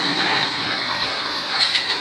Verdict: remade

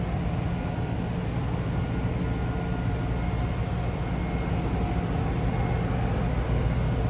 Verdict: recorded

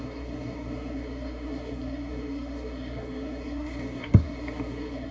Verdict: remade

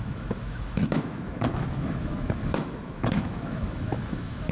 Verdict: remade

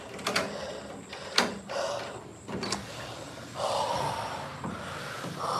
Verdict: recorded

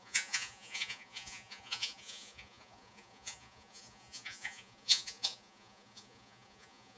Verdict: remade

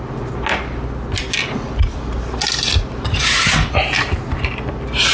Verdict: recorded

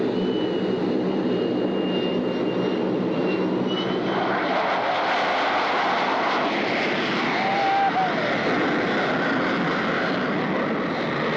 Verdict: recorded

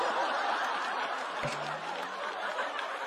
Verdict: recorded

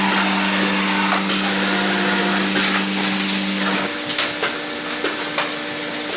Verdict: recorded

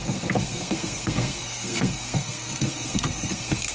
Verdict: remade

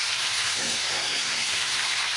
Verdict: remade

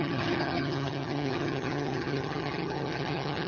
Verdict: remade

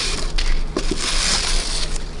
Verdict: recorded